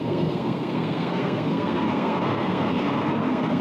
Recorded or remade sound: remade